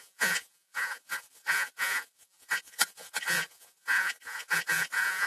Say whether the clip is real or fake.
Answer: fake